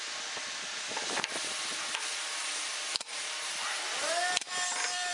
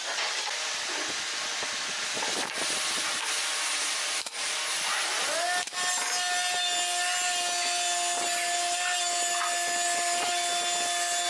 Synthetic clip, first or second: first